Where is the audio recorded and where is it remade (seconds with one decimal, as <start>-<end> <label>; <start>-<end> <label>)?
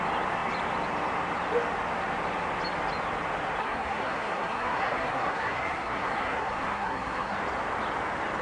0.0-3.6 recorded; 3.6-7.4 remade; 7.4-8.4 recorded